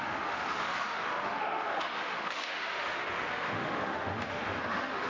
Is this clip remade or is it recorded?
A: remade